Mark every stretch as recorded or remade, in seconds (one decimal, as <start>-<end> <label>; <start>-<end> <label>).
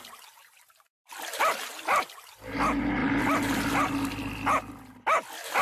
0.0-5.6 recorded